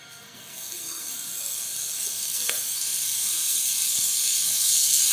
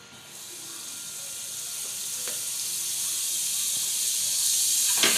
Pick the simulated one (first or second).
first